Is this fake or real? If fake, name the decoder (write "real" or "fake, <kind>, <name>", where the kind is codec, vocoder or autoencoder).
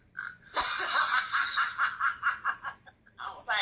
real